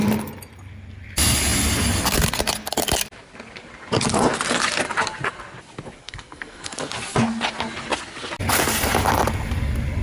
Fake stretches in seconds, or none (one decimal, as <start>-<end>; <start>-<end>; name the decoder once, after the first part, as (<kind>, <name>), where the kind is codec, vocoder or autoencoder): 6.0-6.9 (codec, SNAC)